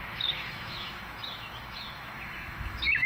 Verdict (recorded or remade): remade